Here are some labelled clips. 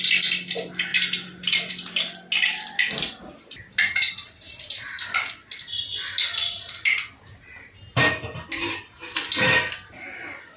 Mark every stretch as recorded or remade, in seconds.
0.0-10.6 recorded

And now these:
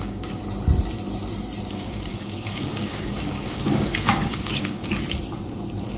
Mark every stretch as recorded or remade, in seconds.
0.0-0.4 remade; 0.4-1.7 recorded; 1.7-4.8 remade; 4.8-6.0 recorded

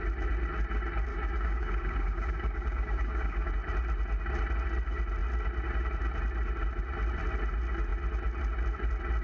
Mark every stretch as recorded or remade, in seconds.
0.0-1.1 recorded; 1.1-3.5 remade; 3.5-9.2 recorded